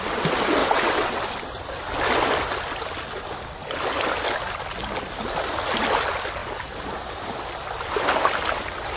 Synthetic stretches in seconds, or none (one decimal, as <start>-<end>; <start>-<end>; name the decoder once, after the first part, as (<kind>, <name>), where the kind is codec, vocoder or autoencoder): 0.6-1.2 (vocoder, WaveNeXt)